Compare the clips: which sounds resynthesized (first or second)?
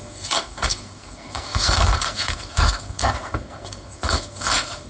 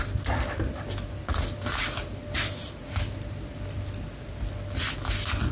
first